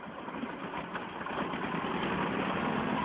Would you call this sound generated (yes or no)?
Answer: no